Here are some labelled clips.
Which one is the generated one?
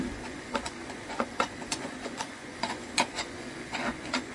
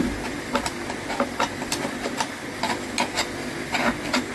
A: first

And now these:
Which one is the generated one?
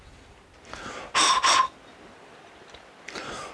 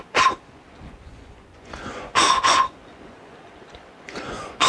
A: second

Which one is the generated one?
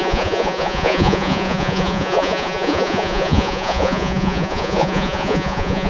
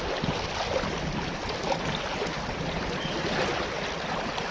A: first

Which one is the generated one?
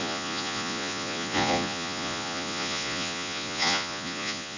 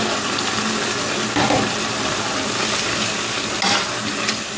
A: first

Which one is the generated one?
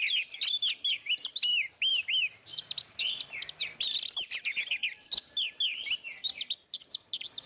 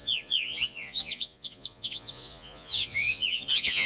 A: second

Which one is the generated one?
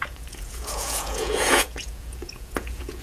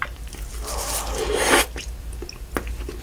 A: first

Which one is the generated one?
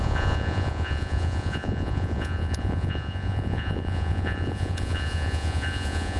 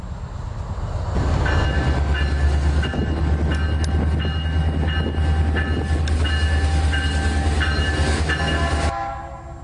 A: first